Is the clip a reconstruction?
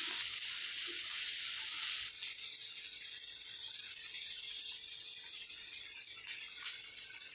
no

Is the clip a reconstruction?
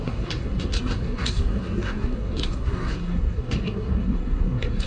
yes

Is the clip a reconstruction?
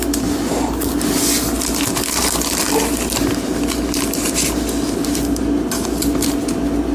no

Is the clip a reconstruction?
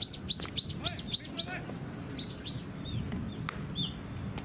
no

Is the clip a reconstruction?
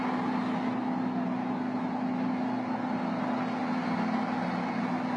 no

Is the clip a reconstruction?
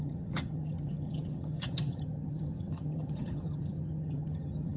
yes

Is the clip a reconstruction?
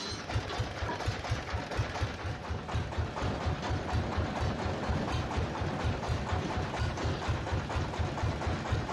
no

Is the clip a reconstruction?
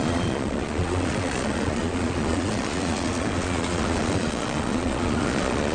yes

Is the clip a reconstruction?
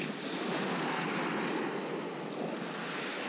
no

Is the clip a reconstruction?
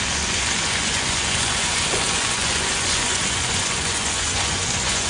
yes